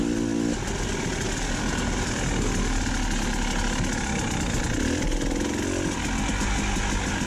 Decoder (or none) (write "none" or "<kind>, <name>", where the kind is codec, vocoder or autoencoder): none